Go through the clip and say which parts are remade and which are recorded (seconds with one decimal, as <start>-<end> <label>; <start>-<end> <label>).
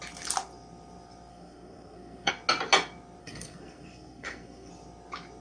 0.0-1.3 recorded; 1.3-2.3 remade; 2.3-3.2 recorded; 3.2-4.7 remade; 4.7-5.4 recorded